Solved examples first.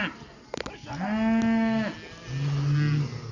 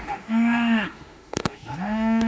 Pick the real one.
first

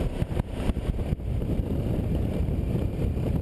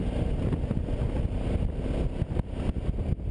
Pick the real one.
second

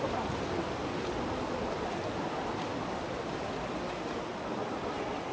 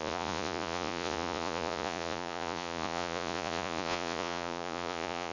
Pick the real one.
first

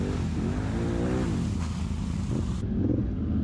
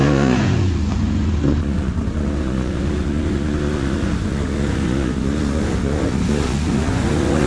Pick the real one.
first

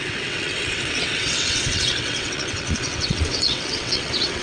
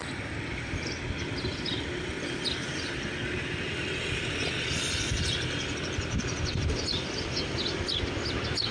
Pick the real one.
second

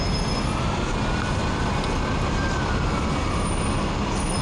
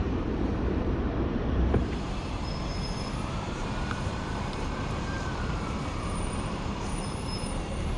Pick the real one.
first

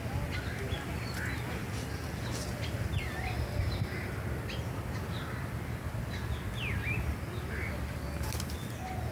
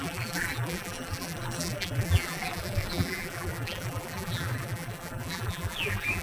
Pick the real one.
first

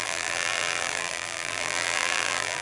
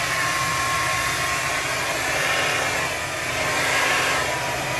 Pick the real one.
second